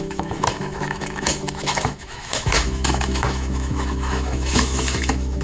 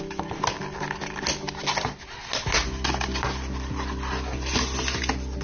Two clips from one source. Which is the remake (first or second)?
first